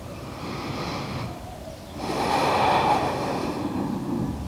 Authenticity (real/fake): real